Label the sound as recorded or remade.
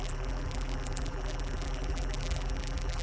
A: remade